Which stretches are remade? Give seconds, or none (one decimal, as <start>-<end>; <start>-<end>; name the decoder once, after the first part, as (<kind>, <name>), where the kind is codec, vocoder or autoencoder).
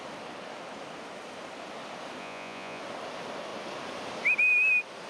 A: 2.2-2.8 (vocoder, Vocos)